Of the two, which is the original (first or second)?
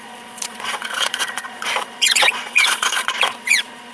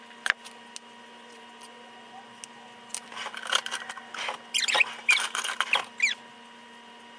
second